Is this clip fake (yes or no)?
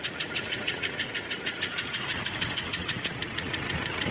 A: yes